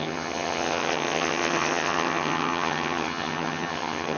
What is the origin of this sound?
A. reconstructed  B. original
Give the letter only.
A